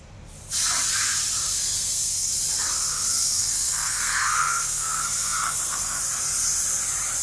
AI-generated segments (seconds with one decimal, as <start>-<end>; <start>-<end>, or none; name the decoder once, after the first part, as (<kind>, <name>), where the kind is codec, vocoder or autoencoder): 1.4-2.3 (codec, SNAC); 2.9-6.0